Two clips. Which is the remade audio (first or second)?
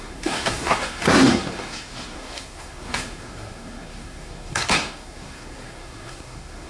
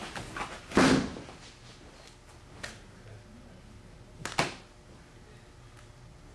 first